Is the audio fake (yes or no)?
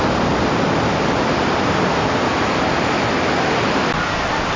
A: no